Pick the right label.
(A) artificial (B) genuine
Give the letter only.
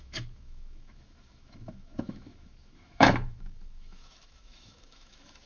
A